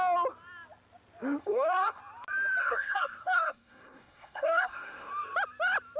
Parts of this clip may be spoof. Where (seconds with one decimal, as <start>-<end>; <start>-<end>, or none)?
1.4-2.0; 2.6-5.1

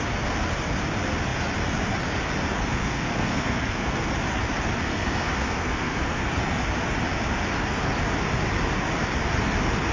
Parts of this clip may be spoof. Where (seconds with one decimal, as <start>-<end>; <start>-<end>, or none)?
2.7-4.1; 4.9-6.2